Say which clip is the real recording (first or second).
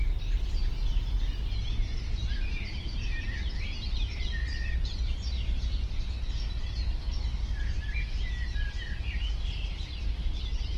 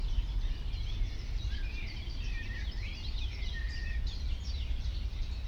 first